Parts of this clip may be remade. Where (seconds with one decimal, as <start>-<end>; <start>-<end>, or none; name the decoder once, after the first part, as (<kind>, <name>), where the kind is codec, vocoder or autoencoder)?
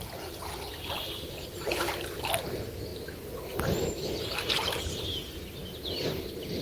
none